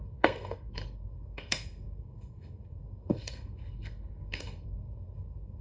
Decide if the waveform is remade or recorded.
remade